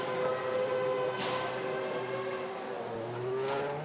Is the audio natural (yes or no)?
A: yes